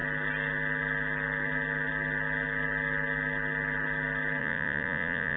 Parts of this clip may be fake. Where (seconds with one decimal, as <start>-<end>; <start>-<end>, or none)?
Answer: 4.4-5.4

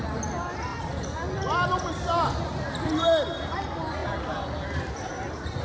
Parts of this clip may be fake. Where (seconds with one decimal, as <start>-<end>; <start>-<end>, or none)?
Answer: none

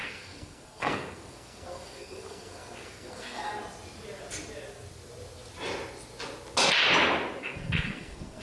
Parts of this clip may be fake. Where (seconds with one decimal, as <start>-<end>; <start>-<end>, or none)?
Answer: 0.0-3.5; 7.4-8.4

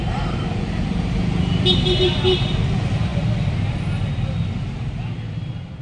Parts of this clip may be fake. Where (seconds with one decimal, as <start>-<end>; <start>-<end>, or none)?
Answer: none

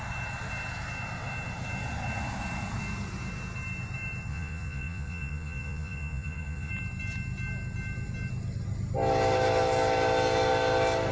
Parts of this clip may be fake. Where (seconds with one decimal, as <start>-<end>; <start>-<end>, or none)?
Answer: 4.3-6.7

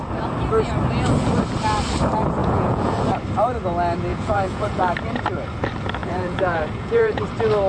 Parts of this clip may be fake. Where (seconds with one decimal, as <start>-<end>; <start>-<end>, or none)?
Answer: 2.4-3.0; 4.1-4.8; 6.0-7.2

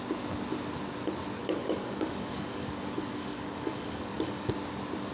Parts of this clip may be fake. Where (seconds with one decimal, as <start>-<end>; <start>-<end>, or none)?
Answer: 1.4-4.5